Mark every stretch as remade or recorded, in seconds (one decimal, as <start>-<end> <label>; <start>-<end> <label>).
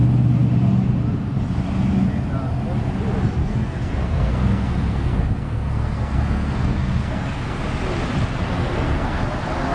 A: 0.0-3.4 recorded; 3.4-7.6 remade; 7.6-8.6 recorded; 8.6-9.2 remade; 9.2-9.7 recorded